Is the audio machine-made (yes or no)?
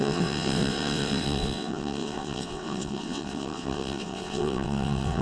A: yes